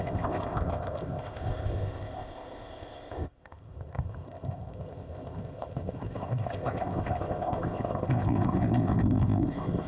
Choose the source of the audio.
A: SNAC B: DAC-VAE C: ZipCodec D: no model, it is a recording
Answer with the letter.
C